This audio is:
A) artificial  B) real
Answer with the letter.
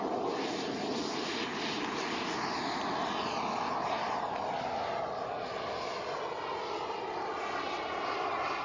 B